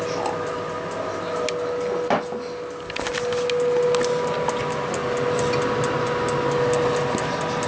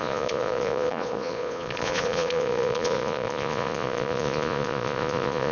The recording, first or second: first